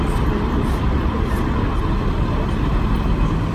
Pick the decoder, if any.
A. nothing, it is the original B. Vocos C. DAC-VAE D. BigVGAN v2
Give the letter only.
A